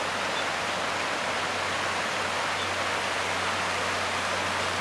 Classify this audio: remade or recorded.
recorded